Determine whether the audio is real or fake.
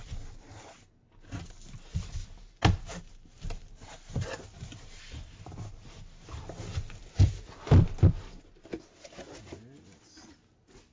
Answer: real